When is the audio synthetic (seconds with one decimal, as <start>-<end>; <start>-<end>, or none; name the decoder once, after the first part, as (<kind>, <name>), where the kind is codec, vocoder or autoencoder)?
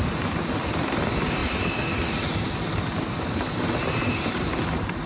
0.0-1.4 (vocoder, BigVGAN v2); 4.3-5.1